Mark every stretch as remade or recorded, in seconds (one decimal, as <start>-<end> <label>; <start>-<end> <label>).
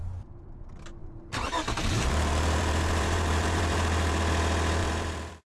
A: 0.0-0.6 remade; 0.6-1.0 recorded; 1.0-4.2 remade; 4.2-4.8 recorded; 4.8-5.6 remade